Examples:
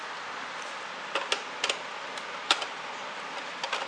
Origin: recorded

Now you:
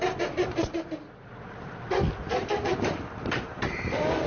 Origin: recorded